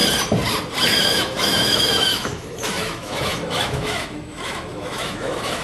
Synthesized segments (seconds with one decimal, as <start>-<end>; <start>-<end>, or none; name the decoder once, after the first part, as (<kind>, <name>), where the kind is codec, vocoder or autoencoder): 1.1-5.6 (autoencoder, DAC-VAE)